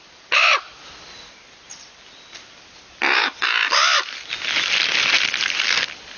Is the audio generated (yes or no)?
no